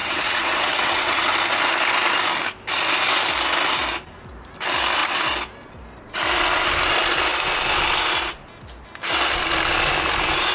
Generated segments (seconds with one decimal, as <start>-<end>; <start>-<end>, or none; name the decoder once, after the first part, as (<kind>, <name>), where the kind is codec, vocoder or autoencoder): 0.0-1.2 (vocoder, WaveNeXt)